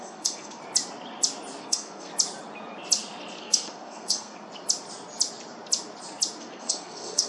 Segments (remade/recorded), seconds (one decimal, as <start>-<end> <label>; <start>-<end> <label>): 0.0-0.6 remade; 0.6-1.6 recorded; 1.6-2.1 remade; 2.1-3.4 recorded; 3.4-4.3 remade; 4.3-6.4 recorded; 6.4-7.3 remade